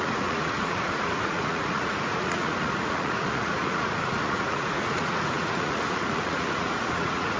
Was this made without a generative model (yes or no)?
no